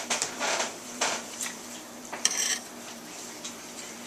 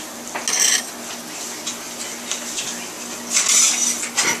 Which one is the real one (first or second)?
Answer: second